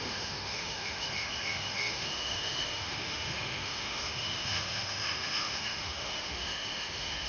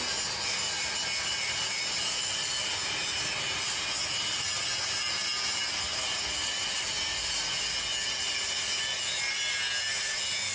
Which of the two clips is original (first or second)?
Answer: second